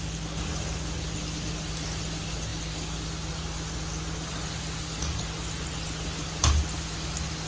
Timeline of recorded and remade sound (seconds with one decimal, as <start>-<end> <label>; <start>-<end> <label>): 0.0-7.5 recorded